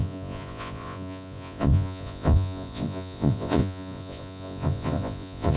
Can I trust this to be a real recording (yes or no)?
no